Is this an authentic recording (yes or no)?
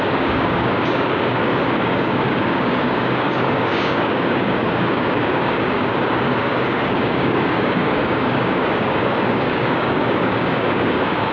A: no